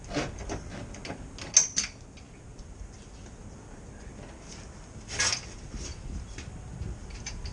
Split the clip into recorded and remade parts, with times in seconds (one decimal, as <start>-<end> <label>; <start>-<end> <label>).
0.0-2.5 recorded; 2.5-6.3 remade; 6.3-7.5 recorded